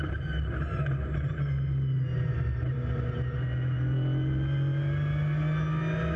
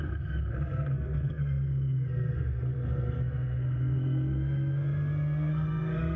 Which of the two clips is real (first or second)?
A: first